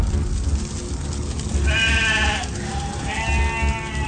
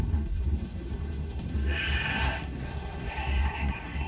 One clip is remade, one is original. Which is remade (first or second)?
second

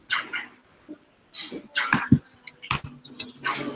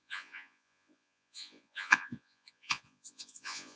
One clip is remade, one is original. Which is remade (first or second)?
second